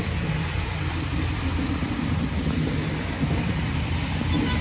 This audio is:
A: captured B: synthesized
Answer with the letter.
A